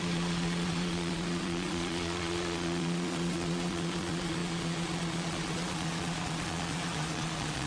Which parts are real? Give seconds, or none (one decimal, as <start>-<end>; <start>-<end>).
none